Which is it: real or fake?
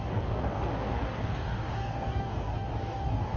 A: fake